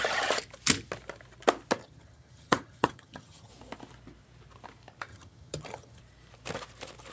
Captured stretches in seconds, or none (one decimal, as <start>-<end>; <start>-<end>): 0.0-1.8; 3.5-5.1; 6.0-7.1